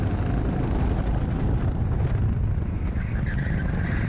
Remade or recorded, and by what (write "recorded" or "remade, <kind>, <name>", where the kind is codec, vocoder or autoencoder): recorded